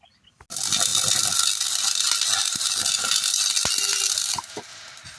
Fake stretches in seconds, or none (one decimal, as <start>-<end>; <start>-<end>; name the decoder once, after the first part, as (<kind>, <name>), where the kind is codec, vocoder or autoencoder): none